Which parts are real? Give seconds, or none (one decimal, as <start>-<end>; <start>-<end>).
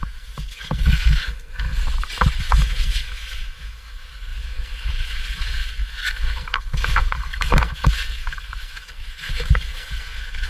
1.8-2.4